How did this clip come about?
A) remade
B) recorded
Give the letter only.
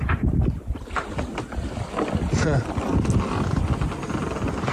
B